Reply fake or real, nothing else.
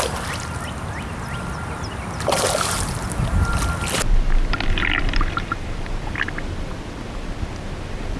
real